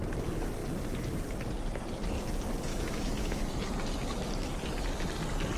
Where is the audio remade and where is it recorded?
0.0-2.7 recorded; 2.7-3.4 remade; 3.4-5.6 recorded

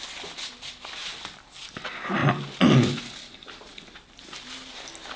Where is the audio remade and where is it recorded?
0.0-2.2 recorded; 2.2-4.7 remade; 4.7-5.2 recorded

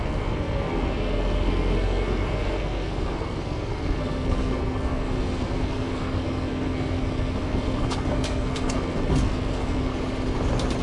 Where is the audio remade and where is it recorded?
0.0-9.9 remade; 9.9-10.8 recorded